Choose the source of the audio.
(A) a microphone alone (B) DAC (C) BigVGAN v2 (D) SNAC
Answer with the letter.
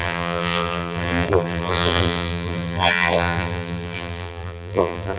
C